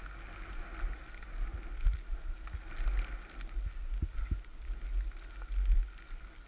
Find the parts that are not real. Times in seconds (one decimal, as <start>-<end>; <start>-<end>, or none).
none